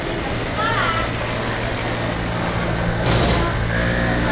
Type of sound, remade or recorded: recorded